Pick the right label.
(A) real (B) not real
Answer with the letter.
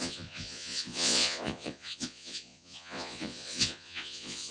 B